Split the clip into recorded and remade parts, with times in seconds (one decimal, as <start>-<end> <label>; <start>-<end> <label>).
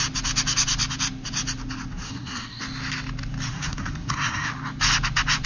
0.0-1.9 recorded; 1.9-2.6 remade; 2.6-3.5 recorded; 3.5-4.5 remade; 4.5-5.5 recorded